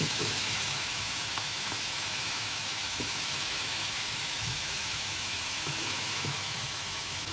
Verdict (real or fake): fake